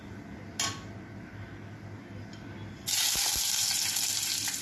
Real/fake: real